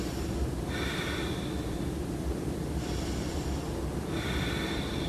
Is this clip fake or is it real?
fake